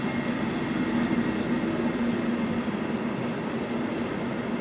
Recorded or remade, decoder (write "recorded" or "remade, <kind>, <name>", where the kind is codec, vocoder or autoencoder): recorded